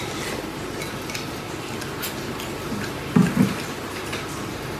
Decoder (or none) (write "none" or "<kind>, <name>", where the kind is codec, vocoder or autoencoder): none